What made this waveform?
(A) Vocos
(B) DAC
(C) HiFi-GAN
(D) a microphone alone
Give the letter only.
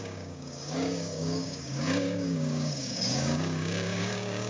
B